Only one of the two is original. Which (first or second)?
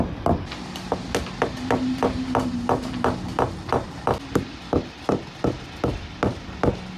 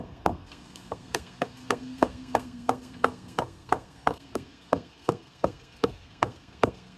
first